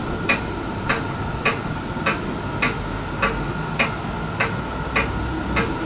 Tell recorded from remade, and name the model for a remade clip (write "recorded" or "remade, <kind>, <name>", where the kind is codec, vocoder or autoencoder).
recorded